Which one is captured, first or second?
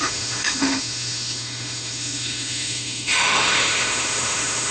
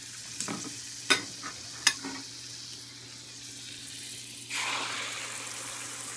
second